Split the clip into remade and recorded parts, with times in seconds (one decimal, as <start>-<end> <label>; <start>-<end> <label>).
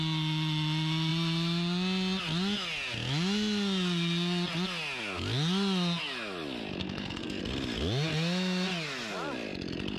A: 0.0-6.8 recorded; 6.8-7.4 remade; 7.4-10.0 recorded